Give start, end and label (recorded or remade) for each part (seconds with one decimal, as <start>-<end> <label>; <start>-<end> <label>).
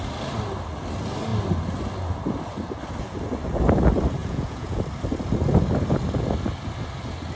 0.0-4.2 recorded; 4.2-4.8 remade; 4.8-7.4 recorded